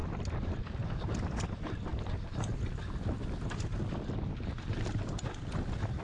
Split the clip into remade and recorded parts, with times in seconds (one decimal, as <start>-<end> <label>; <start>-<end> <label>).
0.0-0.6 remade; 0.6-6.0 recorded